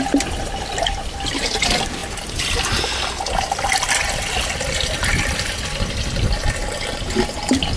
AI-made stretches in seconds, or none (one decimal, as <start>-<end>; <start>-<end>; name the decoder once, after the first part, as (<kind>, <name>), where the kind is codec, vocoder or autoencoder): none